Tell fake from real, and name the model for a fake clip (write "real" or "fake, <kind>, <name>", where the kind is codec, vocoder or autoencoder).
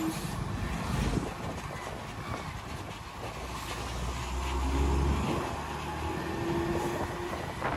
real